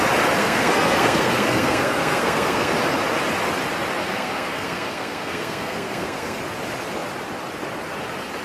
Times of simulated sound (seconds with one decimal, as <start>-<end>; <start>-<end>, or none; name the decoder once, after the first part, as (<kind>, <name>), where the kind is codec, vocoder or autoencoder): 0.4-2.7 (codec, SNAC); 4.0-6.4